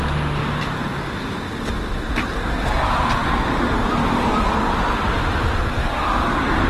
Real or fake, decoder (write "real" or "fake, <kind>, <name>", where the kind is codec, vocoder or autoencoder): real